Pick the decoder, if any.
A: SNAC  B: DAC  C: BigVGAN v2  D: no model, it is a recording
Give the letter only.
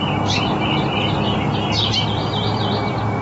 D